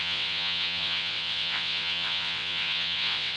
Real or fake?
fake